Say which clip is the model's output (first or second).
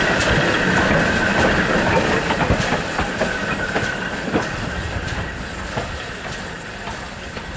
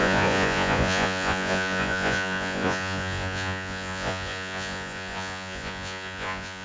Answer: second